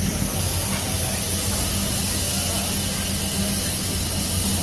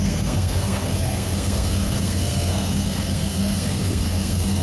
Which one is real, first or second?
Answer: first